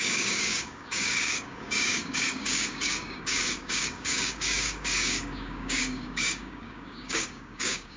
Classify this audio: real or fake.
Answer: fake